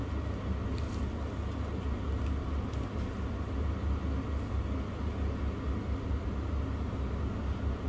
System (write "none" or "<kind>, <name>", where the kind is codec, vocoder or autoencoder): none